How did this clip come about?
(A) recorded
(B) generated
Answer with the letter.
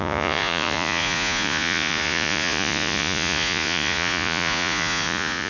B